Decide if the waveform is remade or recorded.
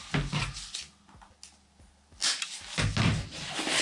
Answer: recorded